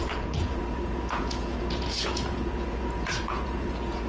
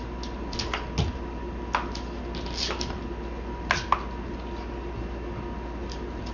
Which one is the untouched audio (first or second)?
second